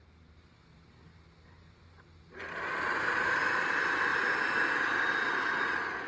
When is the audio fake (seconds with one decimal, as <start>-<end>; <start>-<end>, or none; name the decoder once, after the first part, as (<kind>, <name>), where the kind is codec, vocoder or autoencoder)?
none